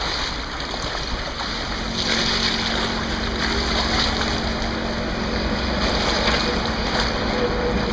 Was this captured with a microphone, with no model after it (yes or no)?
yes